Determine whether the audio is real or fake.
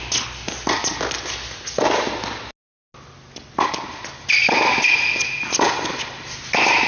real